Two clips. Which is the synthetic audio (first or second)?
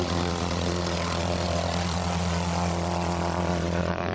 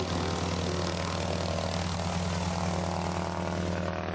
first